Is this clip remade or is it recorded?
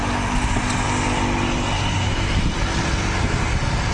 recorded